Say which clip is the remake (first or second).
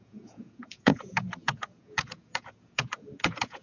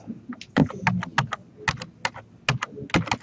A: first